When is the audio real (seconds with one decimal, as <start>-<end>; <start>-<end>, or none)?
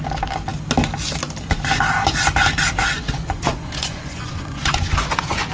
0.0-2.8